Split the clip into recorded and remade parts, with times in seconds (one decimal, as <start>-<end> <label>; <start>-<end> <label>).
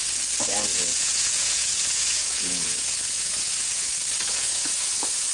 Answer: 0.0-0.7 recorded; 0.7-3.9 remade; 3.9-4.3 recorded; 4.3-5.3 remade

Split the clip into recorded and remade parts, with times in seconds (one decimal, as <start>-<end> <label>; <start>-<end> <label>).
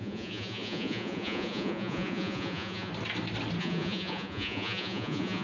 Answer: 0.0-2.9 remade; 2.9-3.6 recorded; 3.6-5.4 remade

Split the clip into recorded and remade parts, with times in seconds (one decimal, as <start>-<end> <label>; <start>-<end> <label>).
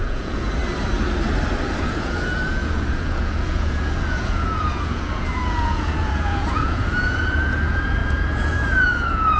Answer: 0.0-0.6 remade; 0.6-1.8 recorded; 1.8-9.4 remade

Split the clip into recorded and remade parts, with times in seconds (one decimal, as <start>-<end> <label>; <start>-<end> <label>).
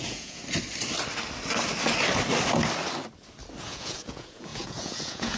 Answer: 0.0-0.4 remade; 0.4-3.6 recorded; 3.6-5.4 remade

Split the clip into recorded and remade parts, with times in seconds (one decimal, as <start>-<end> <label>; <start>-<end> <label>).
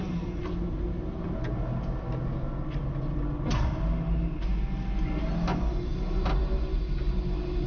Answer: 0.0-7.7 recorded